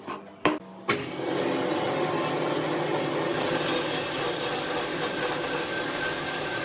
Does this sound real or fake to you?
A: real